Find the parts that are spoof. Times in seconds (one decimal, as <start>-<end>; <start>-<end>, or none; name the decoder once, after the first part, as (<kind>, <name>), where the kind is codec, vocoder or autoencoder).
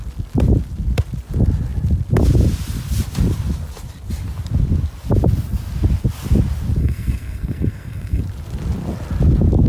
6.8-8.2 (codec, SNAC)